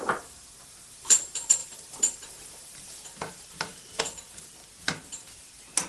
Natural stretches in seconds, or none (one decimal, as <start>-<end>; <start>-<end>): 4.6-5.9